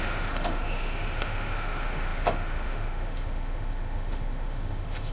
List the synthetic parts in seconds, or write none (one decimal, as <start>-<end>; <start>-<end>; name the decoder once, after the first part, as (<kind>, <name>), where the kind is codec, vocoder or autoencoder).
0.0-5.1 (autoencoder, DAC-VAE)